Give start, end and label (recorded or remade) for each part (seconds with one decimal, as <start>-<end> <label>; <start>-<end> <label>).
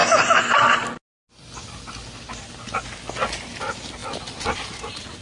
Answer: 0.0-5.2 recorded